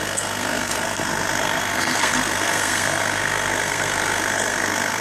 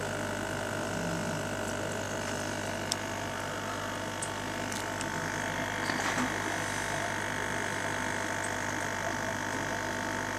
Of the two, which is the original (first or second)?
second